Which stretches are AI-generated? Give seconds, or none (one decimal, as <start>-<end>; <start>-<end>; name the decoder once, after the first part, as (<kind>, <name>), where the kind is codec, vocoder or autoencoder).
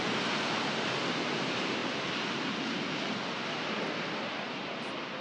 none